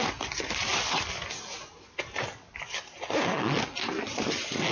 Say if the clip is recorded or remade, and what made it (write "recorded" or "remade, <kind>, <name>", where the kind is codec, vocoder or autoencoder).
recorded